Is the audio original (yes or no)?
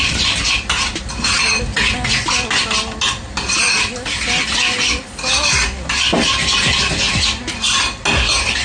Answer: yes